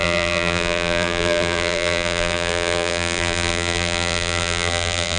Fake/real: fake